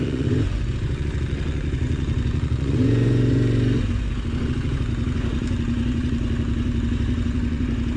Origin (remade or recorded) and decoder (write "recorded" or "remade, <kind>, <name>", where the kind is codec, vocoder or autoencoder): remade, vocoder, Vocos